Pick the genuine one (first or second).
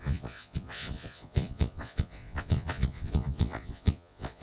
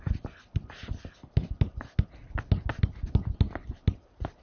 second